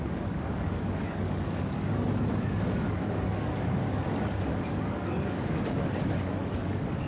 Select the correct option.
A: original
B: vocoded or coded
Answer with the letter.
B